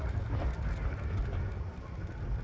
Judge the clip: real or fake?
real